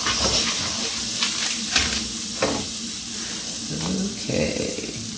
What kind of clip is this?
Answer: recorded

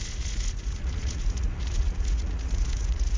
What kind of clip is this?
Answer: remade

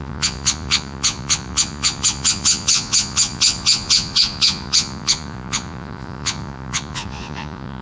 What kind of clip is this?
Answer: remade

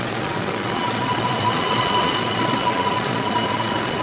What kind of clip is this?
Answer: remade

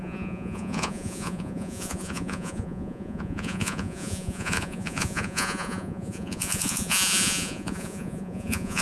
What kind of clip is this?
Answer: remade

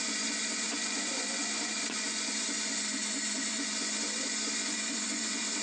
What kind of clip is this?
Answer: remade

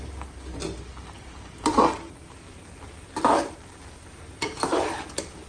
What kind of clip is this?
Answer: recorded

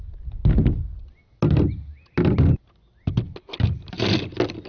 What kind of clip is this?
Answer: recorded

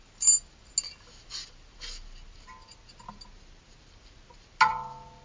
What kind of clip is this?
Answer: recorded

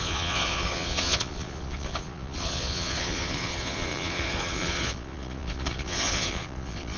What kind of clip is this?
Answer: remade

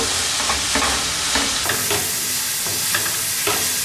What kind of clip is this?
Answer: recorded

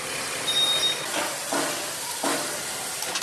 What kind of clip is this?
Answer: recorded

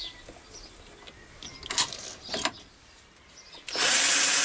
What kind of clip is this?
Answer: recorded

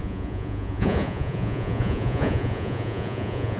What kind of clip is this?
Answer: remade